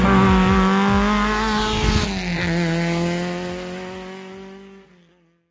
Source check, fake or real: real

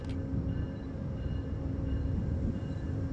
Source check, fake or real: real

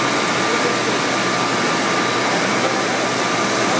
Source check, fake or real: real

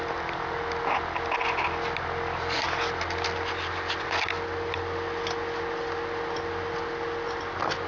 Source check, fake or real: real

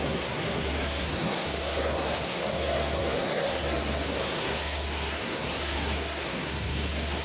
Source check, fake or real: fake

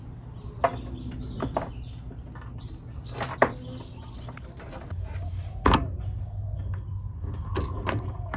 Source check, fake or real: real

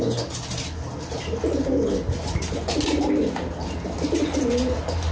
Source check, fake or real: real